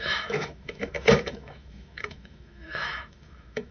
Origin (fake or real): fake